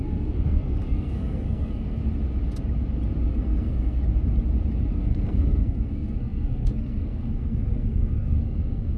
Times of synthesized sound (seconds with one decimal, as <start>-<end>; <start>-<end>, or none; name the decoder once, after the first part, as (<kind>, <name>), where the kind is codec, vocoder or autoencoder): 0.0-2.0 (codec, SNAC); 3.3-4.0; 4.9-9.0

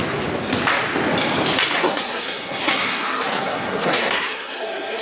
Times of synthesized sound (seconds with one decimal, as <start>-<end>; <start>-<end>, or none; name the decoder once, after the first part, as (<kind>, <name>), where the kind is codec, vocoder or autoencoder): 1.8-5.0 (codec, SNAC)

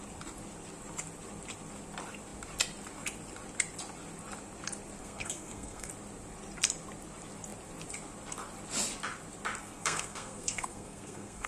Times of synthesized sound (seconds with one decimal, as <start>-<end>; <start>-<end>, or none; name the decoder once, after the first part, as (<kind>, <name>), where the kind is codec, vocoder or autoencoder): 5.0-5.9 (codec, SNAC); 9.6-11.5